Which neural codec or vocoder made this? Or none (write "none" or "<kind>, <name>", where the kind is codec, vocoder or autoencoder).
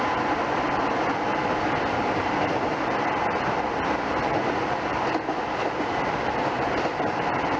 vocoder, BigVGAN v2